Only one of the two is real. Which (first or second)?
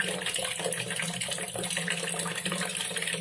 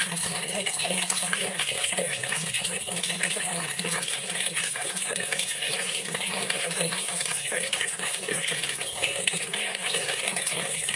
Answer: first